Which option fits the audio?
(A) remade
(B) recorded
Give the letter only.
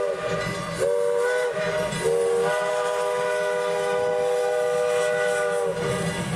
B